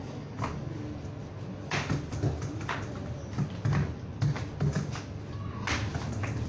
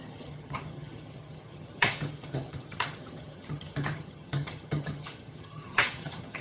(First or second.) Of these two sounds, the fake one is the second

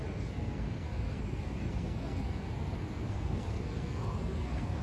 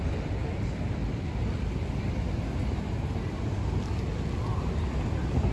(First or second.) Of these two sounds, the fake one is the first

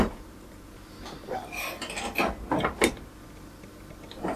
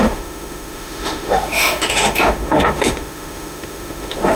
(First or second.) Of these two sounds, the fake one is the second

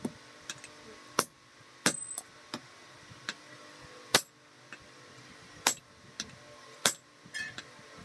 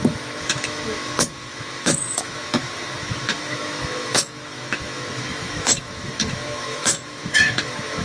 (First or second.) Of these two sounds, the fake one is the second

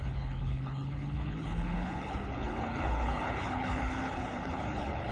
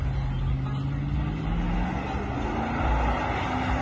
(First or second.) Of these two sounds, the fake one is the first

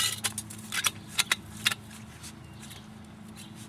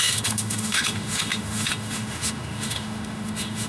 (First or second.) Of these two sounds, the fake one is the second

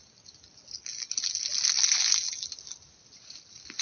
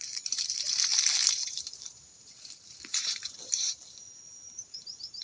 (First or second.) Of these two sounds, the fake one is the second